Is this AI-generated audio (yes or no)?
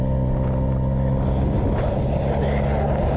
no